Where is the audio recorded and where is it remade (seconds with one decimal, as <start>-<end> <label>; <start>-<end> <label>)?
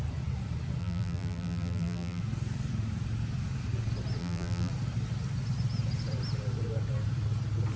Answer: 0.0-0.8 recorded; 0.8-2.2 remade; 2.2-4.2 recorded; 4.2-4.7 remade; 4.7-7.8 recorded